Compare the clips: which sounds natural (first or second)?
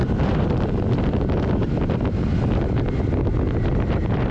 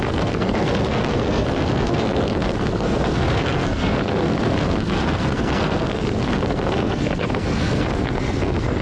first